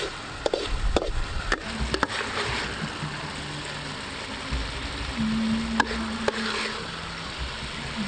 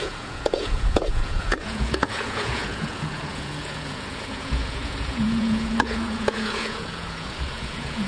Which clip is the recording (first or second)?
first